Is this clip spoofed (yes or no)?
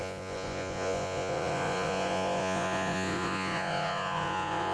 yes